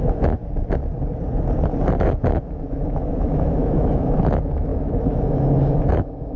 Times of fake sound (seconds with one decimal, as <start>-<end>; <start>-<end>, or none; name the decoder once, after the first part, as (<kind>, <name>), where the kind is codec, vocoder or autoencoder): 0.0-0.4 (autoencoder, DAC-VAE); 2.0-6.4